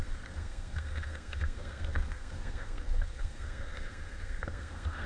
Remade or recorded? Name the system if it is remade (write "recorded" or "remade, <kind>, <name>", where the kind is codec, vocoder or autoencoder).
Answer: remade, codec, SNAC